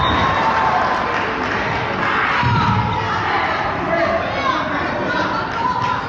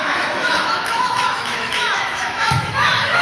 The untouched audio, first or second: first